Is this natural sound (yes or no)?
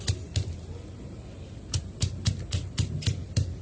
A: yes